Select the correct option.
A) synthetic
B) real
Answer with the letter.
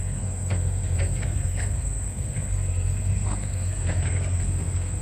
A